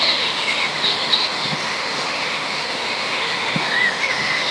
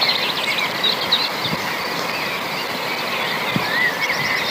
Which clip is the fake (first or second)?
first